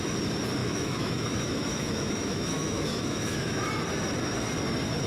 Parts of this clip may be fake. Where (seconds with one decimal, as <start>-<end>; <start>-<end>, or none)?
0.6-3.6